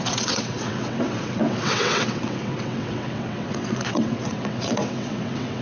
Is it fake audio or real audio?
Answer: fake